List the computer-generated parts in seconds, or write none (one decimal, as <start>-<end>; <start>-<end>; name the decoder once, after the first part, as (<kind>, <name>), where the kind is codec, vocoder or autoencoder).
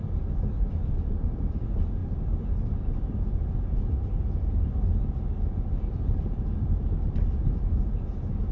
none